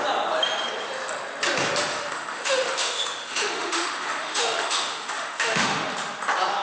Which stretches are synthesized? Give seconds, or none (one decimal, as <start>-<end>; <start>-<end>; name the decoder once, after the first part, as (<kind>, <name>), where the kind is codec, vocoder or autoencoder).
1.9-5.9 (autoencoder, DAC-VAE)